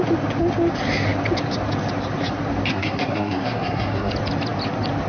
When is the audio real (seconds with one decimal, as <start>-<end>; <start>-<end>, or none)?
0.0-2.7; 4.1-5.1